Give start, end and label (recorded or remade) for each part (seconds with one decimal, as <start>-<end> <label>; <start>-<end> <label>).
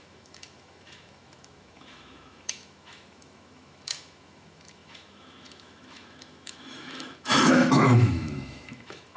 0.0-9.2 remade